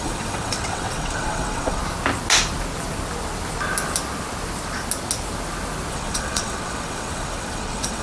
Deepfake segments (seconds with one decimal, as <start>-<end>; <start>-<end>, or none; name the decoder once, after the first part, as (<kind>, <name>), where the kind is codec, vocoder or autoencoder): 0.0-1.8 (vocoder, WaveNeXt); 5.9-8.0